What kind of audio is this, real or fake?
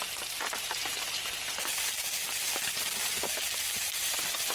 real